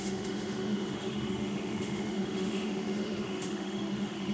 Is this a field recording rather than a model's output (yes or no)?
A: no